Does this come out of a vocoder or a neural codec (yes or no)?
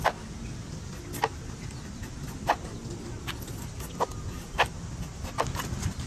no